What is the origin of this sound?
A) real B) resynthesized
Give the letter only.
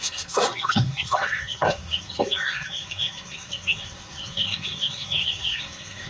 B